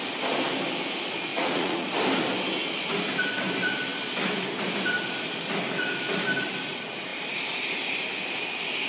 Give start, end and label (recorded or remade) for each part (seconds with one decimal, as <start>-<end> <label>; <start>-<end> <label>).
0.0-1.3 recorded; 1.3-1.9 remade; 1.9-8.9 recorded